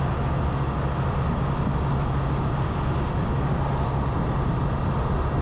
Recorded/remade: recorded